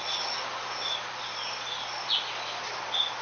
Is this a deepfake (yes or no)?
no